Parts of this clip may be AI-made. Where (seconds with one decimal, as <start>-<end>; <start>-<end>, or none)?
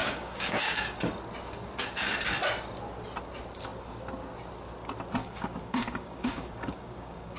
0.0-1.0; 5.2-7.4